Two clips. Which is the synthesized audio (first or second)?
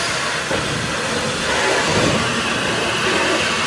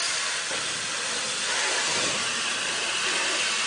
second